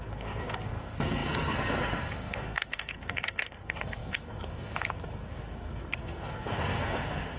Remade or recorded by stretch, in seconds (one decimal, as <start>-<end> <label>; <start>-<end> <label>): 0.0-7.4 remade